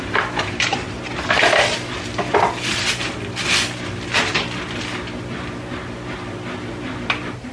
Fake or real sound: real